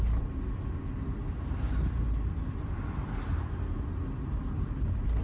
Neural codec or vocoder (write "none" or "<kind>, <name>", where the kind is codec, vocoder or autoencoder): none